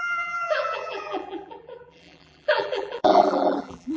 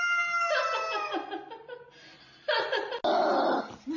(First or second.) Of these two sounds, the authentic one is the second